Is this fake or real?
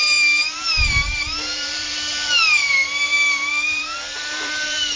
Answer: fake